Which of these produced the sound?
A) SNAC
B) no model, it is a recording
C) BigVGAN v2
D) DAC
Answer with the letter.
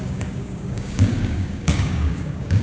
D